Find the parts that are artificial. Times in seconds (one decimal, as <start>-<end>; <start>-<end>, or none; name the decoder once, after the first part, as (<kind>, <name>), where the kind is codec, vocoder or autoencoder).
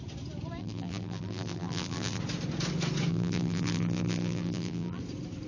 0.6-2.2 (vocoder, BigVGAN v2); 3.1-5.0